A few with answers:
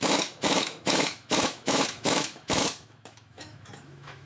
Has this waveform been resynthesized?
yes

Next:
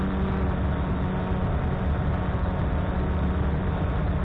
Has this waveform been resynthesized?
no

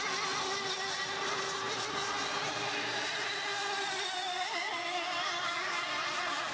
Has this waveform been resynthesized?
no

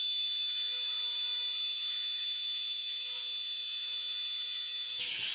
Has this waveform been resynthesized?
yes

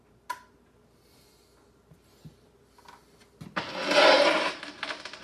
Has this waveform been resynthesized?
no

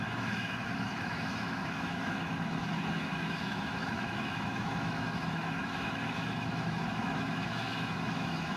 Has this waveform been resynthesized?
yes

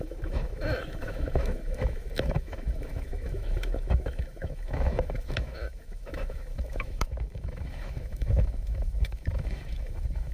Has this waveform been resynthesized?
yes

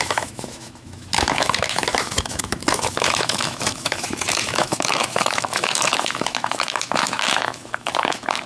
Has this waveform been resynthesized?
yes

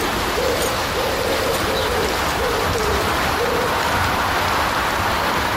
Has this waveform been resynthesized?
no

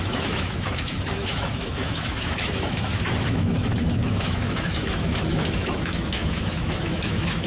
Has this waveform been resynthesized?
yes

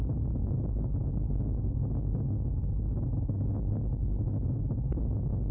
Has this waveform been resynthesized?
no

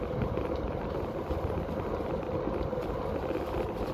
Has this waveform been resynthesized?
no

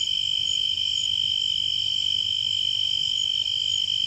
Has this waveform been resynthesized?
no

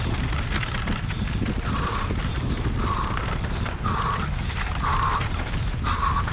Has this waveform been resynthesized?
no